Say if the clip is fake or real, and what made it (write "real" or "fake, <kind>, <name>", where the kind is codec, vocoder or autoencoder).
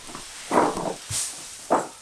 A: fake, vocoder, BigVGAN v2